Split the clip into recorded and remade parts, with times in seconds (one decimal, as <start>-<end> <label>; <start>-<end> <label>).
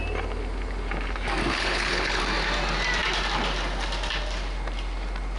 0.0-1.5 recorded; 1.5-2.2 remade; 2.2-5.4 recorded